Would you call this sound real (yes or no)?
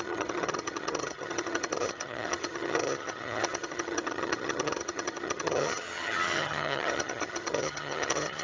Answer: no